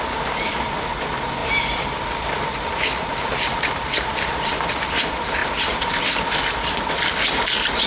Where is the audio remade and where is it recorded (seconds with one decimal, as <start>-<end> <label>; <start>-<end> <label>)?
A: 0.0-1.4 recorded; 1.4-4.9 remade; 4.9-5.4 recorded; 5.4-6.0 remade; 6.0-7.9 recorded